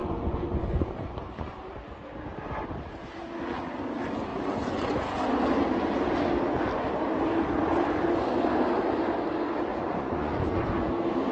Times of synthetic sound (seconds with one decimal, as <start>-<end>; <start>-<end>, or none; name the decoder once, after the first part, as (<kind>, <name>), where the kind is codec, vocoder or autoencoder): 0.0-1.5 (vocoder, Vocos); 4.3-5.2; 9.7-10.9